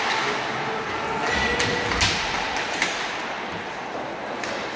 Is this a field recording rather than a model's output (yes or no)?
yes